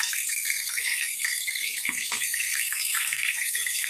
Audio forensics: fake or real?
fake